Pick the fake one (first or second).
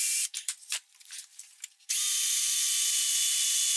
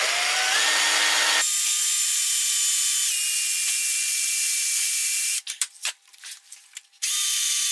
first